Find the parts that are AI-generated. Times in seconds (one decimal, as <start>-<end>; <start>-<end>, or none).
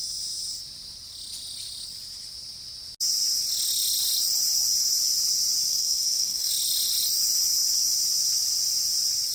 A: 5.7-6.5